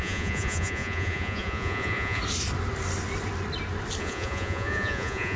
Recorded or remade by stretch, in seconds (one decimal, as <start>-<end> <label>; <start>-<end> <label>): 0.0-2.2 remade; 2.2-4.0 recorded; 4.0-5.4 remade